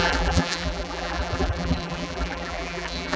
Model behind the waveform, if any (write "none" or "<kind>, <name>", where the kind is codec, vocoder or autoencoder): vocoder, BigVGAN v2